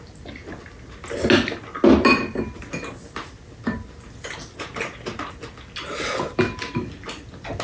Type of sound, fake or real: real